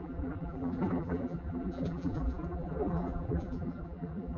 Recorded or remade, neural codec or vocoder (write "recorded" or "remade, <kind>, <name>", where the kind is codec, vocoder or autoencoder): remade, vocoder, BigVGAN v2